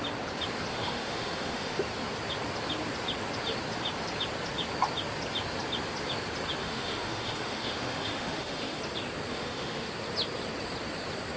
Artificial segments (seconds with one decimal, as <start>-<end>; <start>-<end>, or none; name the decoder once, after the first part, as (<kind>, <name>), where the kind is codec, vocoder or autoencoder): 0.7-1.8 (autoencoder, DAC-VAE); 6.6-8.8; 9.3-9.9